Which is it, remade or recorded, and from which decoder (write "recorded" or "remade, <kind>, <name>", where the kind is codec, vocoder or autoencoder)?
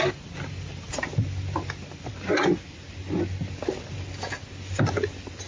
recorded